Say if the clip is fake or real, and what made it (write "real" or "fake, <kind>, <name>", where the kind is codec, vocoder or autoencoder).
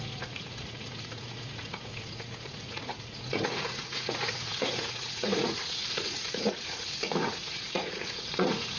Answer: fake, vocoder, Vocos